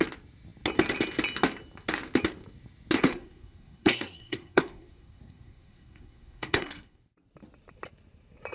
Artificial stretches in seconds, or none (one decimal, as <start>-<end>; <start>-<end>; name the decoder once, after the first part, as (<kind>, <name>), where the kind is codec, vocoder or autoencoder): 3.1-7.0 (codec, SNAC)